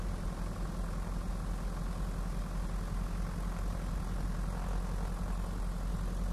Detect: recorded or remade recorded